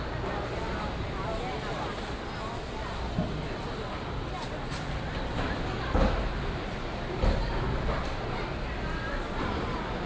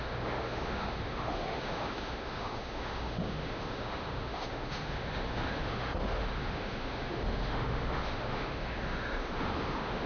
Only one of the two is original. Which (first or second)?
first